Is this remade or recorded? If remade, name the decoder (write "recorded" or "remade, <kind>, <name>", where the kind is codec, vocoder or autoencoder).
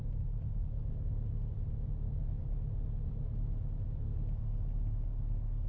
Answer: recorded